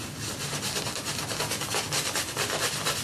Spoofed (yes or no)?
no